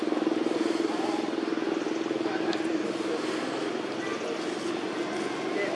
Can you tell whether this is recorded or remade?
recorded